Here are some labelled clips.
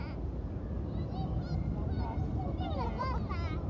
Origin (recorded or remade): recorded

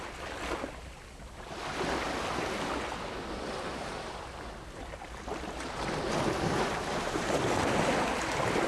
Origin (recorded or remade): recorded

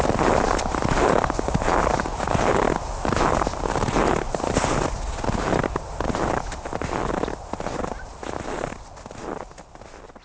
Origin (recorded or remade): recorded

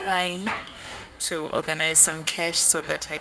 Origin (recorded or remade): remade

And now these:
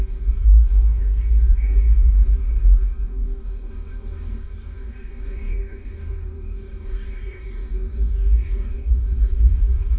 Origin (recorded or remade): remade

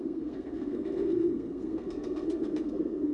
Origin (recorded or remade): remade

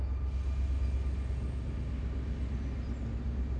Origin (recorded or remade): recorded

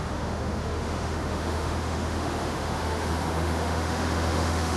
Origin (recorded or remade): remade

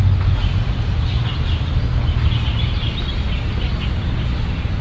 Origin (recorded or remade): recorded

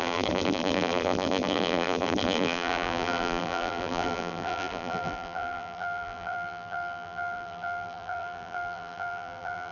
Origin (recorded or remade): remade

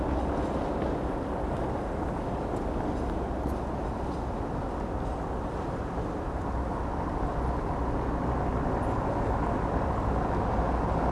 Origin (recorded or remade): recorded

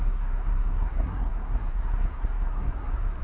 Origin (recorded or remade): remade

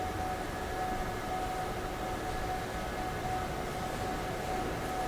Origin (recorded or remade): recorded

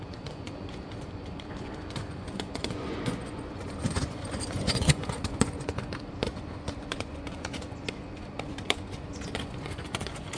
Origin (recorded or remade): remade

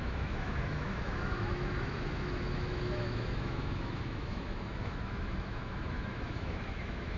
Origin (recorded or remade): remade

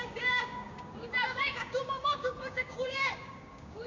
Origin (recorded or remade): remade